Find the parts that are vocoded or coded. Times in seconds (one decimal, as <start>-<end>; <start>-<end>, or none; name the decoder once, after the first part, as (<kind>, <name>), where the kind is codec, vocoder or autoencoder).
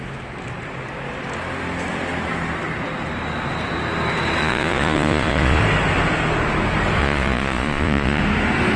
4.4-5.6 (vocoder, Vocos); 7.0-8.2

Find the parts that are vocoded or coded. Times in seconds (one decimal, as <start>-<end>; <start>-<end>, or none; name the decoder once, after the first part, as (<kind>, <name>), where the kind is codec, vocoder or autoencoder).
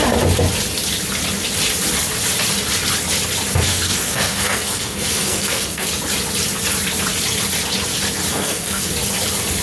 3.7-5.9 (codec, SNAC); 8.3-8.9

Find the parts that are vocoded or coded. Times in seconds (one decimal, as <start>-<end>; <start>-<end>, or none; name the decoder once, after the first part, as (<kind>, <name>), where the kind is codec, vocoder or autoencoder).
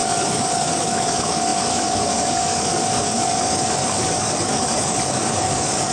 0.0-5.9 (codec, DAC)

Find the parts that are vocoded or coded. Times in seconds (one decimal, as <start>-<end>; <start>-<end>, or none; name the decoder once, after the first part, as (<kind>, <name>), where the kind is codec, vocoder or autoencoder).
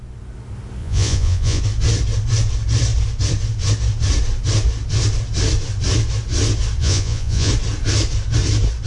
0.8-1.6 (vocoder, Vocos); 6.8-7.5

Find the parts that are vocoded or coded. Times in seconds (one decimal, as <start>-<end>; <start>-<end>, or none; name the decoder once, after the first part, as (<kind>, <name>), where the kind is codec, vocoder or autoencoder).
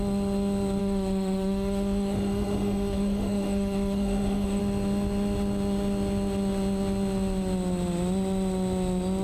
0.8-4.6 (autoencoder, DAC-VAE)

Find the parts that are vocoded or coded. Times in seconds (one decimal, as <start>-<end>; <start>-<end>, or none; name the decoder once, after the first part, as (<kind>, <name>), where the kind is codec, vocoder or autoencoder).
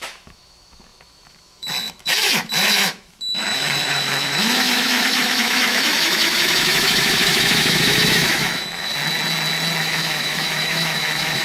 0.0-8.9 (autoencoder, DAC-VAE); 9.8-11.4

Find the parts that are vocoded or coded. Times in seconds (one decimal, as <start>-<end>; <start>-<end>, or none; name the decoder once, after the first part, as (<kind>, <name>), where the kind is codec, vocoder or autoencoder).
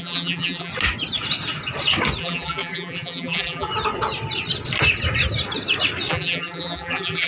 0.0-0.7 (vocoder, BigVGAN v2); 2.2-3.7; 6.1-7.3